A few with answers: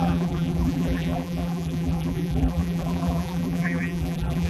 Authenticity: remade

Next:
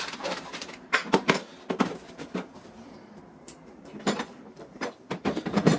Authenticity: remade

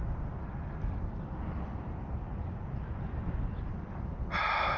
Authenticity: recorded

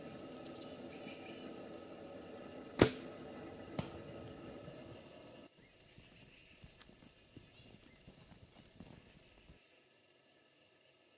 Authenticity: recorded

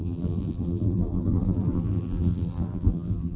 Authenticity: remade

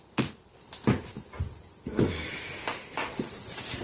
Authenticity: recorded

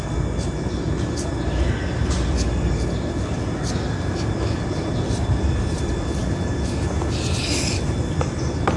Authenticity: recorded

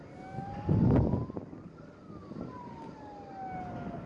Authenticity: recorded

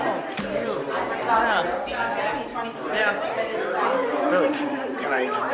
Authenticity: remade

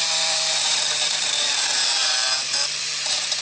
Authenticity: remade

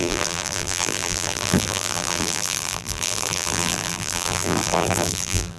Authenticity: remade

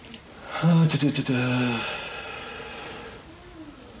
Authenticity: recorded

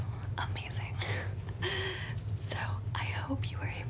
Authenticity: remade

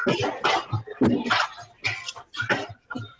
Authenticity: recorded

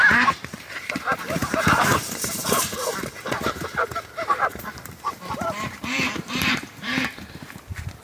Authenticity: remade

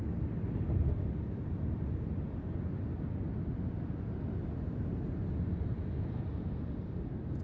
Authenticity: recorded